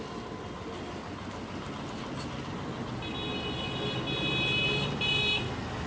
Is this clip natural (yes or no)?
yes